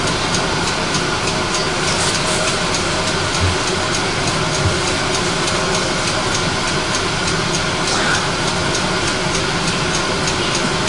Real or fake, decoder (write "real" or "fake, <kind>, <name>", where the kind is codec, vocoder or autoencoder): real